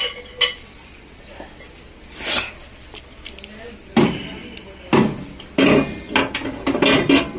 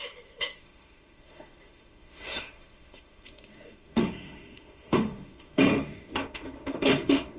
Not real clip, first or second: second